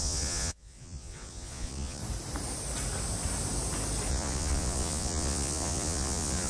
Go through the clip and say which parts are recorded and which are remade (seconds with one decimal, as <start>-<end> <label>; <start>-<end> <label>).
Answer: 0.0-2.0 remade; 2.0-4.1 recorded; 4.1-6.5 remade